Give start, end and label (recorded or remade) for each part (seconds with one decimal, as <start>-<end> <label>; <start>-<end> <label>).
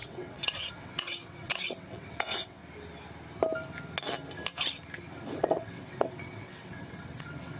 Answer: 0.0-2.6 remade; 2.6-5.4 recorded; 5.4-7.6 remade